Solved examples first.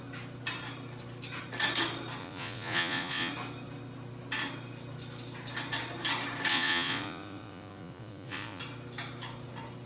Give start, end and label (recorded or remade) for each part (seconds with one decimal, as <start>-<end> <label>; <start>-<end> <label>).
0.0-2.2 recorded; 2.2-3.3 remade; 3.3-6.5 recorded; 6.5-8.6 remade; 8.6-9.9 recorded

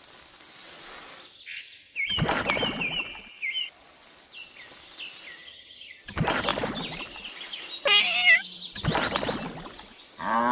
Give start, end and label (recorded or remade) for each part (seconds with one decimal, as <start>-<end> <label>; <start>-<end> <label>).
0.0-5.4 recorded; 5.4-6.0 remade; 6.0-10.5 recorded

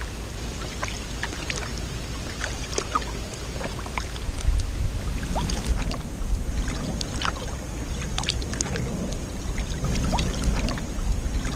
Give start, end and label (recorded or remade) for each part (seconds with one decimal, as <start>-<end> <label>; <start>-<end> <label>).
0.0-11.6 recorded

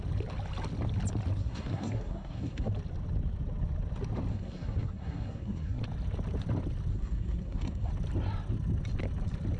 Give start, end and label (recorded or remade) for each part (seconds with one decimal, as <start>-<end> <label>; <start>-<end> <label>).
0.0-1.4 recorded; 1.4-2.7 remade; 2.7-4.3 recorded; 4.3-5.8 remade; 5.8-6.9 recorded; 6.9-7.9 remade; 7.9-9.6 recorded